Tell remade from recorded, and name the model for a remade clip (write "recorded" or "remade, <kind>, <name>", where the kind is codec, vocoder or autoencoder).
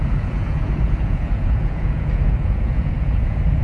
remade, vocoder, Vocos